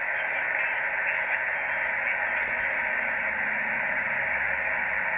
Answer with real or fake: real